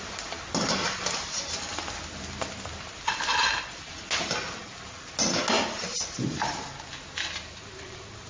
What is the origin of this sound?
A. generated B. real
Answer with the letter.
B